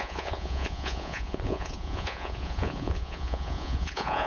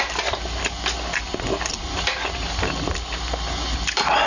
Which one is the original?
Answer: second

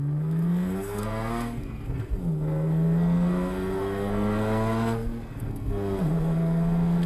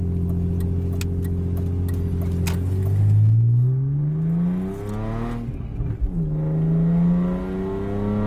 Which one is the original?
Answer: second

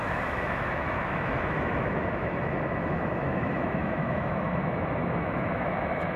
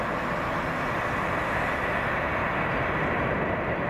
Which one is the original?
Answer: second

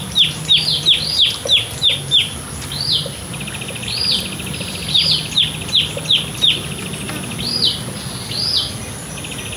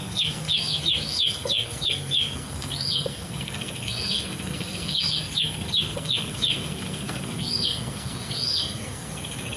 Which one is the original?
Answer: first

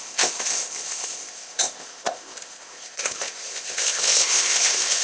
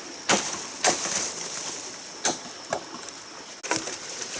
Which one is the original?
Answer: second